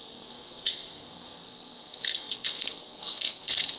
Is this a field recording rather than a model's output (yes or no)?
no